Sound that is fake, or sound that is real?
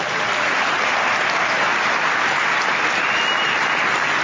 real